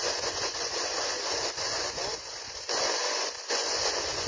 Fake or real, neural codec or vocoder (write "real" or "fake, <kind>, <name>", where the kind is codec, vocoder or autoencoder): fake, vocoder, Vocos